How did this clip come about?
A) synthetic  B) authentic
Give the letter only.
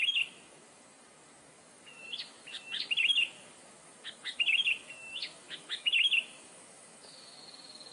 A